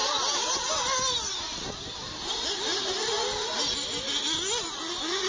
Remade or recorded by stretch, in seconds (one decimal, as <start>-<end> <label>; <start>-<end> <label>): 0.0-5.3 recorded